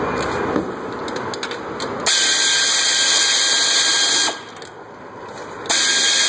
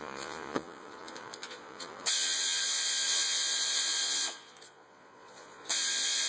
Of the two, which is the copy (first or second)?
second